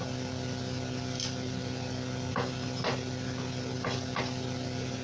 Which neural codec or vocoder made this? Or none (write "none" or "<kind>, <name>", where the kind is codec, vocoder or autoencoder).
none